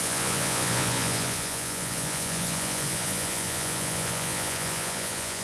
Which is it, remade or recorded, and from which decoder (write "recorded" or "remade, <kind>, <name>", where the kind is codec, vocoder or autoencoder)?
remade, vocoder, Vocos